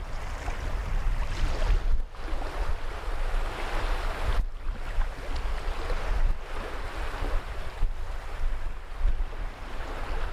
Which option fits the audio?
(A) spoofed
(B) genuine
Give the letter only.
B